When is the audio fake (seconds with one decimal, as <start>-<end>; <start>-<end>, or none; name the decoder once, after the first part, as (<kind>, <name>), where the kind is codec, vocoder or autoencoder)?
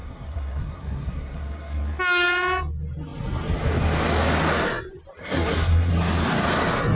0.0-2.0 (codec, SNAC); 5.2-5.9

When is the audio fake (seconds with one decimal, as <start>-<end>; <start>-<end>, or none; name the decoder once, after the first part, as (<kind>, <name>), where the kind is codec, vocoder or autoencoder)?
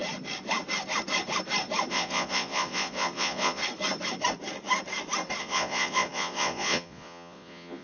1.9-3.6 (vocoder, Vocos); 5.4-7.8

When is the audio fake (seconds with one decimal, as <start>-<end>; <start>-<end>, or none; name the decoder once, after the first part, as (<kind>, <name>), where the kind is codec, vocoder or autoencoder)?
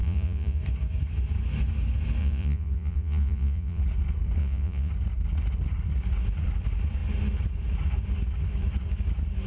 0.0-0.6 (vocoder, Vocos); 2.2-3.8; 4.4-4.9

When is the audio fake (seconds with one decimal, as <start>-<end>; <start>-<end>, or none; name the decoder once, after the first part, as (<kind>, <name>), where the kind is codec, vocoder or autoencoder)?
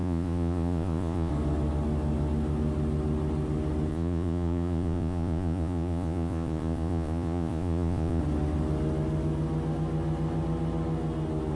0.0-1.3 (vocoder, Vocos); 3.9-8.2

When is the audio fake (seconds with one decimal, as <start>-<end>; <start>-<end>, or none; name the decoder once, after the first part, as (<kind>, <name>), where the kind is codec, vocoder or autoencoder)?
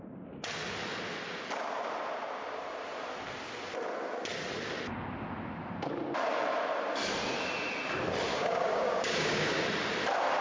8.3-9.6 (codec, DAC)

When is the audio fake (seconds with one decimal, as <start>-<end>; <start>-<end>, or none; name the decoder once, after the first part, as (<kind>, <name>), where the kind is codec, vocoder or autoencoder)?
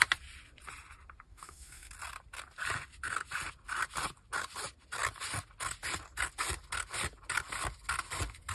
1.3-1.9 (autoencoder, DAC-VAE)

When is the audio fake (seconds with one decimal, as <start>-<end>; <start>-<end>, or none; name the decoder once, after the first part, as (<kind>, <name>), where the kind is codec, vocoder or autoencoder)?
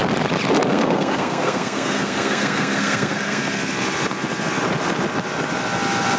0.7-3.4 (codec, SNAC)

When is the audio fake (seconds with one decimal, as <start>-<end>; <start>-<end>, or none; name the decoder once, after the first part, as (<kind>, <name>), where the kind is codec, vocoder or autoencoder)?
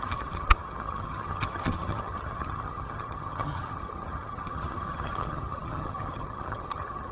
0.0-7.1 (vocoder, HiFi-GAN)